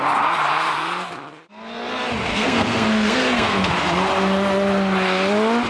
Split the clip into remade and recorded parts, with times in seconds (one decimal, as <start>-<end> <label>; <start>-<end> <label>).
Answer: 0.0-2.3 recorded; 2.3-3.7 remade; 3.7-5.7 recorded